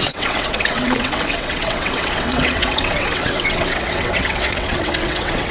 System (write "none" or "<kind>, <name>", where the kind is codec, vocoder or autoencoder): vocoder, WaveNeXt